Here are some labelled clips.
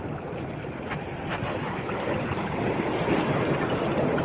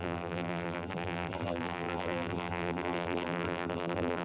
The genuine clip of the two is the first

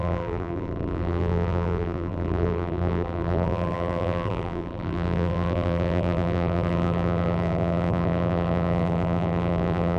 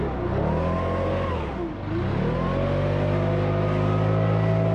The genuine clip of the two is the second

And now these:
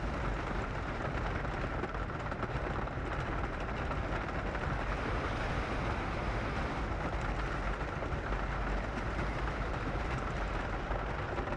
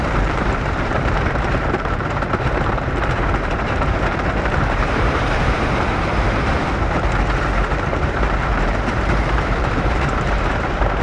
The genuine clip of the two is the first